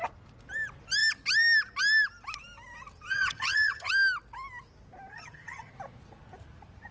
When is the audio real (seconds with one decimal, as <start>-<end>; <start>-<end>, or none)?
0.0-3.1; 3.9-5.1; 5.7-6.9